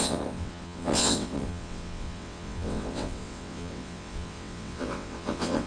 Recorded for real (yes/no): no